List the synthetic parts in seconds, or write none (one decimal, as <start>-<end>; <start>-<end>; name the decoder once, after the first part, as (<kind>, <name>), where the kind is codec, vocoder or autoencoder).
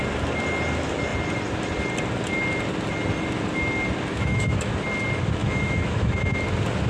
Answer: 4.1-4.7 (autoencoder, DAC-VAE); 5.4-6.2